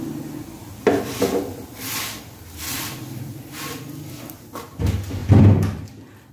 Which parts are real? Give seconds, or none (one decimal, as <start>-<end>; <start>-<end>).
0.0-0.6; 3.8-6.3